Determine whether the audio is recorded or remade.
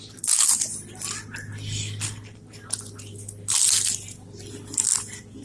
recorded